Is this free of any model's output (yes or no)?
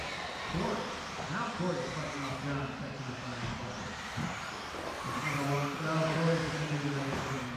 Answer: yes